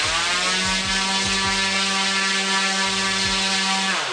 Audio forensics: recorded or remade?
recorded